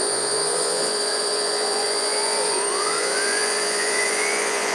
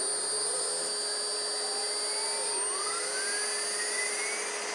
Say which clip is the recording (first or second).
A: second